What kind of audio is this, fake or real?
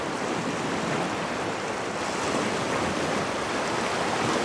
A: real